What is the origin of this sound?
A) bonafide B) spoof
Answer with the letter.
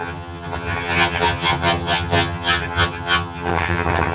B